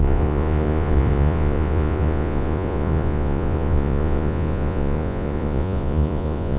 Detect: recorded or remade remade